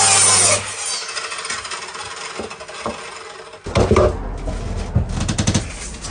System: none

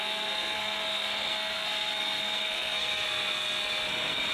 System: codec, SNAC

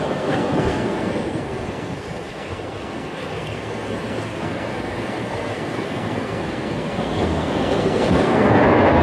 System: codec, SNAC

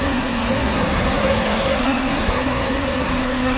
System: codec, SNAC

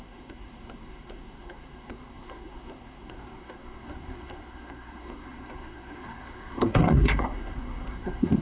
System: codec, SNAC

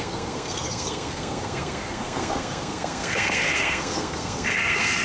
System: codec, SNAC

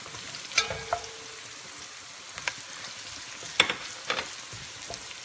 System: none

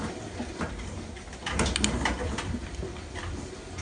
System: none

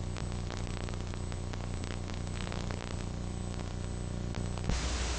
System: none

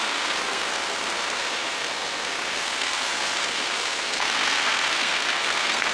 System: codec, SNAC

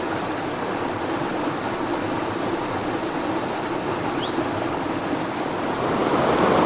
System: none